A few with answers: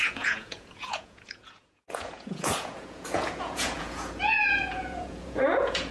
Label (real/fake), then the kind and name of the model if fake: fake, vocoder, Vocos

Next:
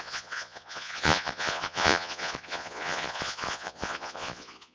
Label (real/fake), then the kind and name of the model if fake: fake, vocoder, Vocos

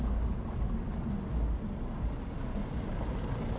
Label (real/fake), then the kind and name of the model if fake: real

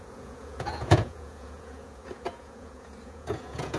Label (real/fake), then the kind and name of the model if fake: fake, vocoder, Vocos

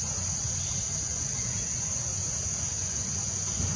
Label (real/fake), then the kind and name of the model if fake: fake, vocoder, Vocos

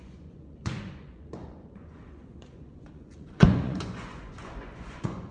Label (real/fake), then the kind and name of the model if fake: fake, vocoder, Vocos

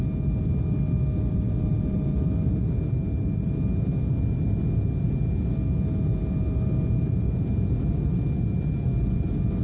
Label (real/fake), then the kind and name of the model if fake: real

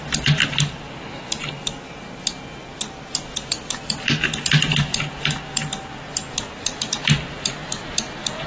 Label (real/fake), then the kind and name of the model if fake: real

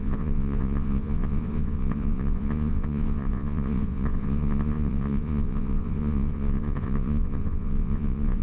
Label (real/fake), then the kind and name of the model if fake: fake, vocoder, Vocos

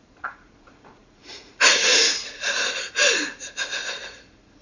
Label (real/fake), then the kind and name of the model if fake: fake, vocoder, Vocos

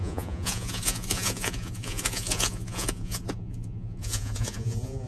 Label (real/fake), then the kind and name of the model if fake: fake, vocoder, Vocos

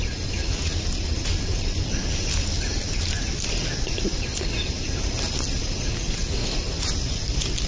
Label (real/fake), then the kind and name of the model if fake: real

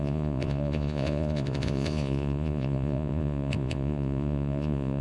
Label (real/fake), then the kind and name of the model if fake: fake, vocoder, Vocos